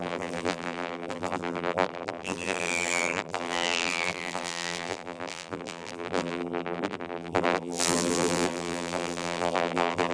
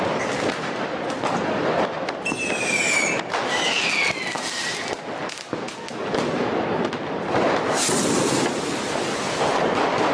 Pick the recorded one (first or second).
second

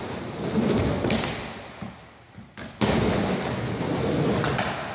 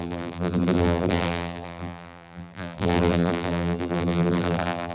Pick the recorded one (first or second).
first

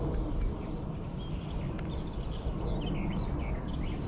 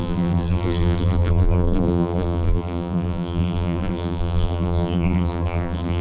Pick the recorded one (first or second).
first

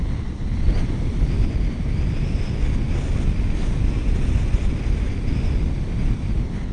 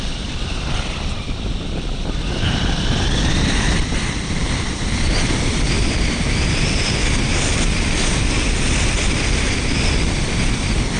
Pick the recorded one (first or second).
first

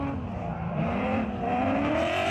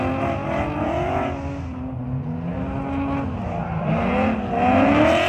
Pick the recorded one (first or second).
second